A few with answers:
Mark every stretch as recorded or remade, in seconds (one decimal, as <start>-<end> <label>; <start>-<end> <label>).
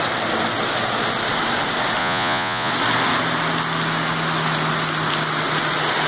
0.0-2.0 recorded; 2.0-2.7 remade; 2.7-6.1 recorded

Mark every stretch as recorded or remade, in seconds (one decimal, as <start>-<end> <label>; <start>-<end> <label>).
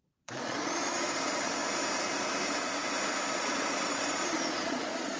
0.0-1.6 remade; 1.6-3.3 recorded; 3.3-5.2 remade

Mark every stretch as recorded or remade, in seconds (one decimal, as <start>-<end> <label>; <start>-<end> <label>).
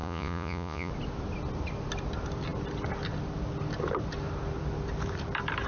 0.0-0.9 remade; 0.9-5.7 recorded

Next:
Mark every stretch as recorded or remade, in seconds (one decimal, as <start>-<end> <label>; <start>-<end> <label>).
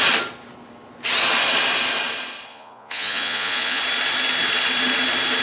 0.0-2.5 recorded; 2.5-3.8 remade; 3.8-5.4 recorded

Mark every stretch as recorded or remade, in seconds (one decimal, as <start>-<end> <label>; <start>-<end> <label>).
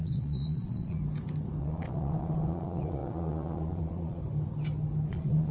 0.0-1.0 remade; 1.0-1.6 recorded; 1.6-4.2 remade; 4.2-5.1 recorded; 5.1-5.5 remade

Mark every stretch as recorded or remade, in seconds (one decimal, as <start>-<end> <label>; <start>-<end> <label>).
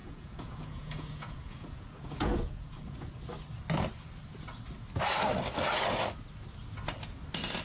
0.0-3.1 remade; 3.1-7.6 recorded